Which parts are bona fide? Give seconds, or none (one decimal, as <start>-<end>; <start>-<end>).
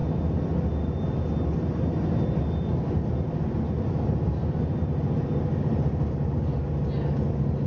0.0-7.7